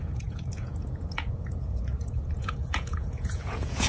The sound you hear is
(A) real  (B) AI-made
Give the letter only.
B